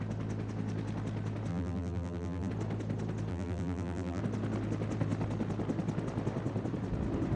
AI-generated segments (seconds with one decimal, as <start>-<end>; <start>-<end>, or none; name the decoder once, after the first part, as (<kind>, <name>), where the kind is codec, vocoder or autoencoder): 1.5-2.5 (vocoder, BigVGAN v2); 3.3-4.2

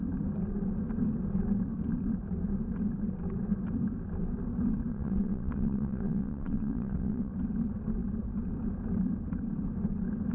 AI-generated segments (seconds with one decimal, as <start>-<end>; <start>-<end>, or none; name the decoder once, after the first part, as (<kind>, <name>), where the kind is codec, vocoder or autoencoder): 4.9-7.3 (vocoder, WaveNeXt)

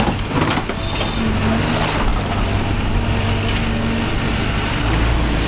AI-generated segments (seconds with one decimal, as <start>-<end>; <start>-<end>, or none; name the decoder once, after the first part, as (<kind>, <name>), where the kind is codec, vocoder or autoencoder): 2.1-3.3 (vocoder, BigVGAN v2)

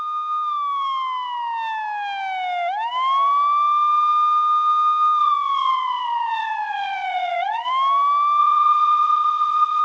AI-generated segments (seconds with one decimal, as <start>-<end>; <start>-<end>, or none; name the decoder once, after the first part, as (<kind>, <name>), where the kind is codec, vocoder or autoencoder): 5.2-7.7 (vocoder, Vocos); 8.4-9.8